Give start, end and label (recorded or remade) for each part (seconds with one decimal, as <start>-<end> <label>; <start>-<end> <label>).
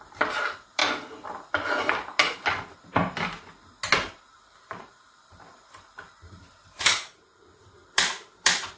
0.0-0.8 remade; 0.8-4.2 recorded; 4.2-8.8 remade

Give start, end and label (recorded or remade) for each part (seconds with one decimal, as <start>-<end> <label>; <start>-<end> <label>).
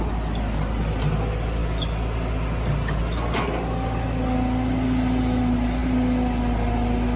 0.0-7.2 recorded